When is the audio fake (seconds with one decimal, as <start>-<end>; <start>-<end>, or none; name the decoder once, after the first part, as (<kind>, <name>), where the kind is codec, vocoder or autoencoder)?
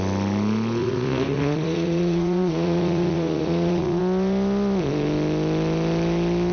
0.8-4.0 (vocoder, Vocos)